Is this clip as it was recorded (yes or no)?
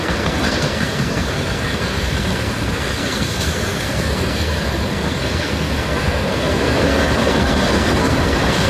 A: no